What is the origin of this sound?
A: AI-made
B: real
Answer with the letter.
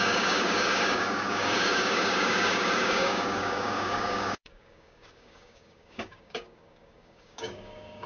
A